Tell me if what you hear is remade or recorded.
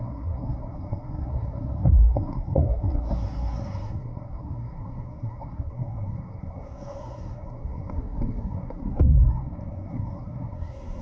remade